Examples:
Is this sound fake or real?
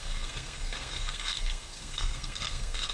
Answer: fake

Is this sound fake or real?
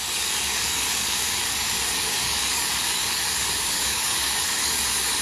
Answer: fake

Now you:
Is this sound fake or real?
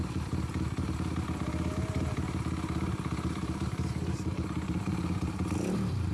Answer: fake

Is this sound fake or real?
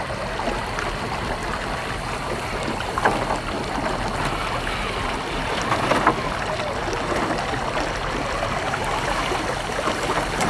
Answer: real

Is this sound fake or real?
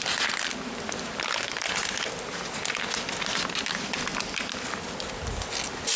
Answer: real